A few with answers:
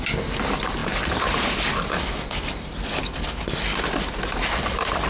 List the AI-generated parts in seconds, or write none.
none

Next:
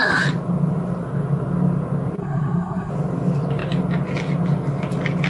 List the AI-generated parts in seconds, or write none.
2.2-2.9 (codec, SNAC)